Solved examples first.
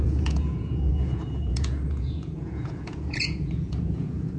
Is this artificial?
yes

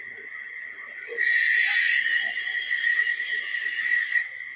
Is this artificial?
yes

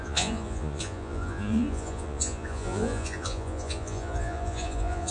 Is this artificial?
yes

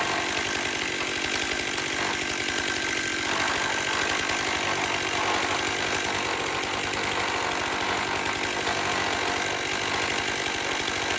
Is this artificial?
no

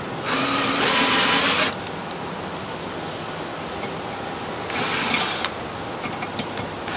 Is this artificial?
no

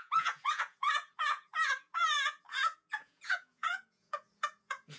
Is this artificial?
yes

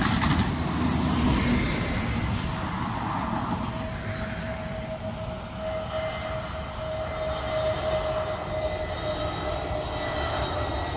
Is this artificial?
no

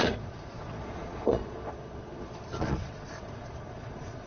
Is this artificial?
yes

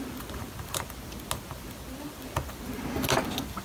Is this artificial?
no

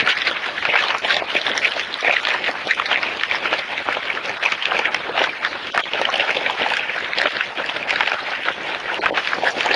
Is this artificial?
no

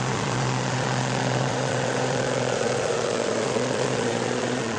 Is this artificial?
yes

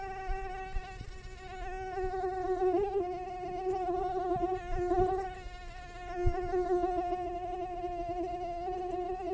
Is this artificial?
no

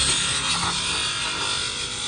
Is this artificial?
no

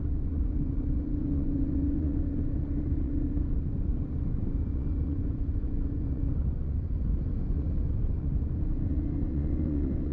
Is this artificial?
yes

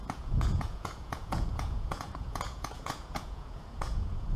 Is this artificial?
yes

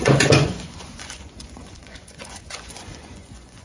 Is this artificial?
yes